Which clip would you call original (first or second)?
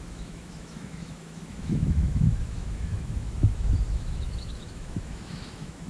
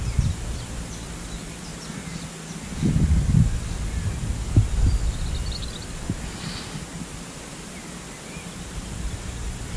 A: second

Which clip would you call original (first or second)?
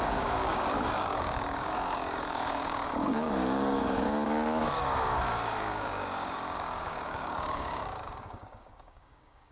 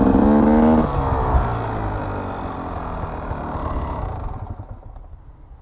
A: second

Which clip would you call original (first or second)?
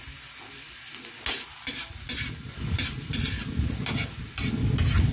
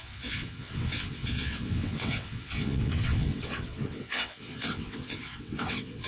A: first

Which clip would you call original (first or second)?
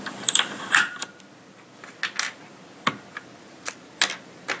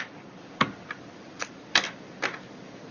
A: first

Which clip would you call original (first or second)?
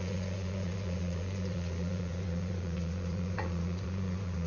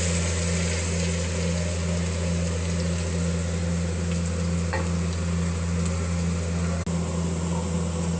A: second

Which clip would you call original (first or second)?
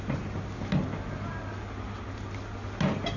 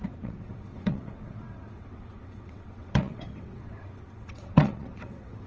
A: first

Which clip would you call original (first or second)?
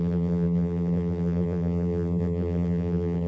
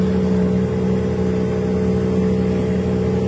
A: second